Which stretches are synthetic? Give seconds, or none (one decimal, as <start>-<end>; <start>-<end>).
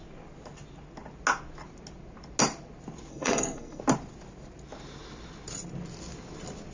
3.1-3.8